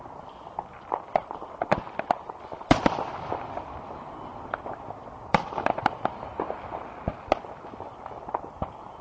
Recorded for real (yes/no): yes